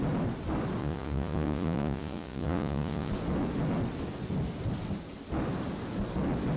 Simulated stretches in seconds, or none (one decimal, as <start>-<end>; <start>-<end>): 0.8-3.1